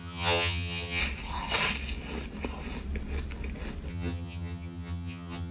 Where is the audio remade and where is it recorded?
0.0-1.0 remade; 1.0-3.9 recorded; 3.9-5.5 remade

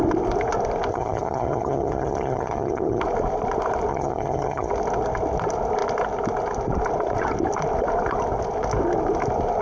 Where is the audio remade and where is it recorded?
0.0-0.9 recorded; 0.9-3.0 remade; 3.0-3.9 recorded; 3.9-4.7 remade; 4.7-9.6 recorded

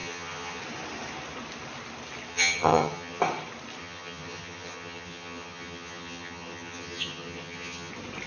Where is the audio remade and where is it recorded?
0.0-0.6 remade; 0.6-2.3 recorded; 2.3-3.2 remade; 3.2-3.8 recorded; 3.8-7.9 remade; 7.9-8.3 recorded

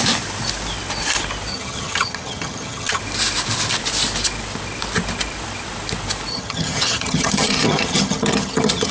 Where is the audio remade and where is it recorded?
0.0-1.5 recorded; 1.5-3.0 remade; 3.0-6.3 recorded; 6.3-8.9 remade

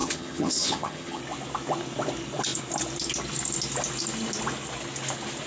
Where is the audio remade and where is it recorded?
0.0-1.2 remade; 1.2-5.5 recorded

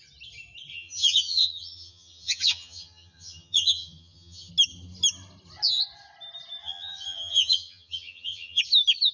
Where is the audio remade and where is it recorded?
0.0-0.7 recorded; 0.7-4.5 remade; 4.5-6.6 recorded; 6.6-8.6 remade; 8.6-9.1 recorded